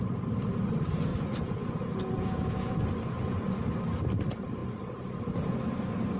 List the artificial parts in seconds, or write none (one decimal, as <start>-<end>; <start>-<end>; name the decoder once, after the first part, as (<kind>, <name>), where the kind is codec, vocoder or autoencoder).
1.1-2.7 (vocoder, Vocos)